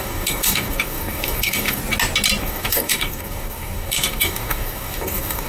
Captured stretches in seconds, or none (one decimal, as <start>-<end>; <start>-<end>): 1.8-2.4